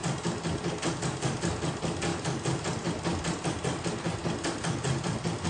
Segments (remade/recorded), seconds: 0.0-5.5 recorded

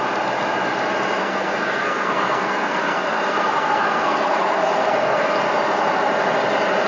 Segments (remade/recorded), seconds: 0.0-1.2 recorded; 1.2-5.3 remade; 5.3-6.9 recorded

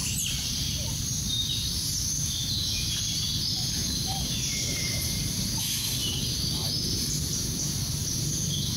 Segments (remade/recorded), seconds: 0.0-3.2 remade; 3.2-3.8 recorded; 3.8-5.6 remade; 5.6-8.8 recorded

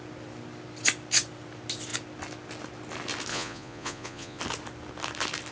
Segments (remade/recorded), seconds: 0.0-3.3 recorded; 3.3-4.4 remade; 4.4-5.5 recorded

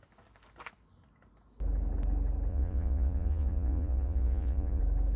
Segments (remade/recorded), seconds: 0.0-2.5 recorded; 2.5-4.8 remade; 4.8-5.2 recorded

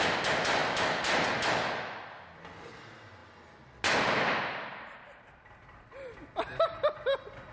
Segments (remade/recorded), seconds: 0.0-7.5 recorded

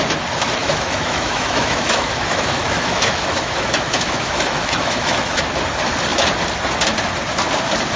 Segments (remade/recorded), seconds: 0.0-0.6 recorded; 0.6-5.4 remade; 5.4-8.0 recorded